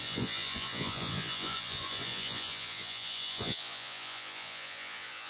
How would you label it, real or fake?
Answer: fake